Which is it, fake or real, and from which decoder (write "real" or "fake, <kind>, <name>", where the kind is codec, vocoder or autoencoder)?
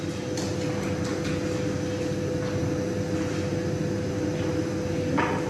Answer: real